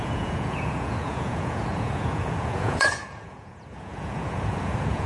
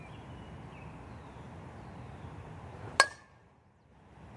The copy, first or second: first